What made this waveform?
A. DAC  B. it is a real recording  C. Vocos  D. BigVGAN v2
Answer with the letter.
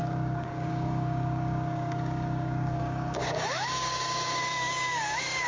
A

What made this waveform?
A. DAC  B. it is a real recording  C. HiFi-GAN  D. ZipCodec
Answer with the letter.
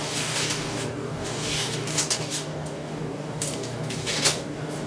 A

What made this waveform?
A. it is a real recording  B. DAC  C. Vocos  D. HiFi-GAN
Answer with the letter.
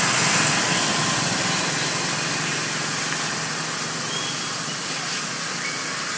A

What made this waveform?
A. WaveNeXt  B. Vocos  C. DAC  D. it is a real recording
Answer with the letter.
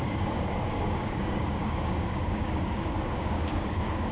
C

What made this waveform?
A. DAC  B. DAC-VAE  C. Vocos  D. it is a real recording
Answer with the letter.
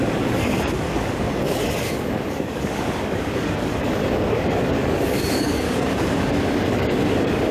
A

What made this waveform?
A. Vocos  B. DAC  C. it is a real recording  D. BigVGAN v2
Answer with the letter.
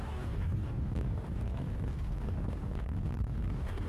B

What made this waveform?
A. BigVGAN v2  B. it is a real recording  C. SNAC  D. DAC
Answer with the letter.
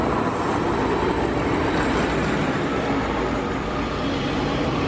B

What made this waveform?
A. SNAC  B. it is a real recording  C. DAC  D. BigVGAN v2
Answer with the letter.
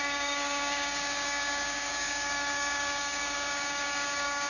C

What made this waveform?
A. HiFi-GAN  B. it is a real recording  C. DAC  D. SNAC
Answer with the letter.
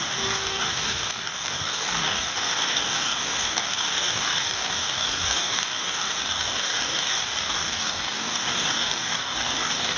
C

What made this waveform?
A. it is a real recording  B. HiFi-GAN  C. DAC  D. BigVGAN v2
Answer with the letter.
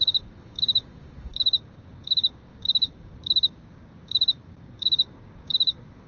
C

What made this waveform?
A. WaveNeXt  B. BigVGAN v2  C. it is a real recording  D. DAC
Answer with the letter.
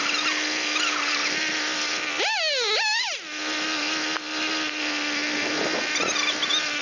C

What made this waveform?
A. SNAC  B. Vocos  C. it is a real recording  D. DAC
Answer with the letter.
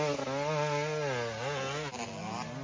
C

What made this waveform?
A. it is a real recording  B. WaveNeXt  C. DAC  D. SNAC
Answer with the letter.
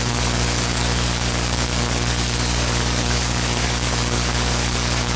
C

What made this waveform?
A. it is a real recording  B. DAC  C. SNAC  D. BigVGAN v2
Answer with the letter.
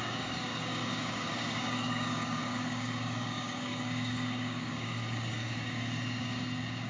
B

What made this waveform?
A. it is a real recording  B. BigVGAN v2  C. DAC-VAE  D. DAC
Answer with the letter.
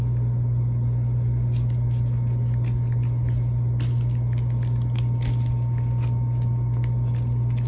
A